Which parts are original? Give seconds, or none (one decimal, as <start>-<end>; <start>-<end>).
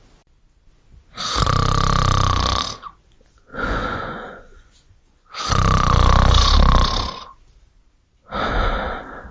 0.0-3.5; 5.4-9.3